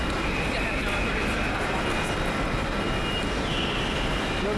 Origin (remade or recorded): recorded